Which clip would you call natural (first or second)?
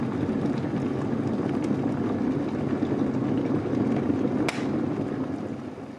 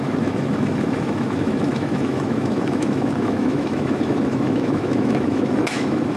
first